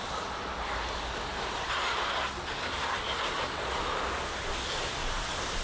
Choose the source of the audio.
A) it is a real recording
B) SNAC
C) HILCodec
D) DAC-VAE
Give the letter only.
A